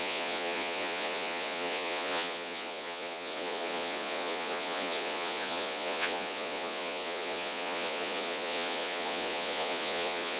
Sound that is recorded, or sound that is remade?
remade